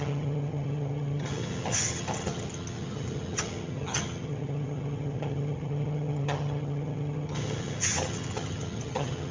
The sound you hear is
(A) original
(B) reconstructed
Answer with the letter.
B